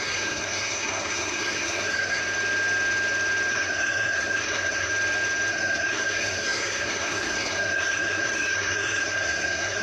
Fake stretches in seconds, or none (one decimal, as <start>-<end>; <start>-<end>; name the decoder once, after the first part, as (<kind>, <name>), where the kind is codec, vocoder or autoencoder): 0.0-2.2 (codec, SNAC); 3.5-4.9; 5.5-9.8